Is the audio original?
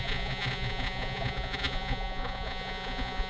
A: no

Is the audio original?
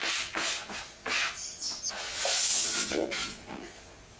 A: no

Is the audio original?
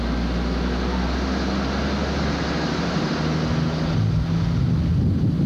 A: yes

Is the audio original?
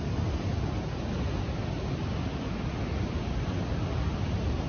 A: yes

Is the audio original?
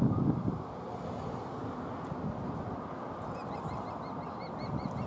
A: yes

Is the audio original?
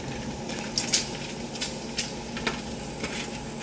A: yes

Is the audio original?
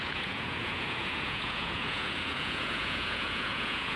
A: no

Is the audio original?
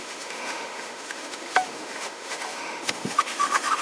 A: no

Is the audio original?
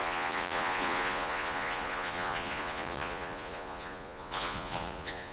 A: no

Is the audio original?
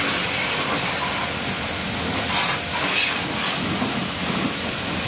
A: yes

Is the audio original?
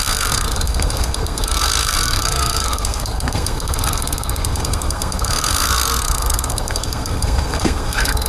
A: no